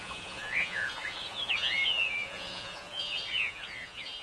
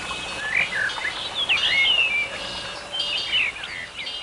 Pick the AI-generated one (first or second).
first